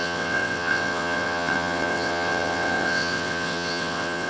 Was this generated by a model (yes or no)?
yes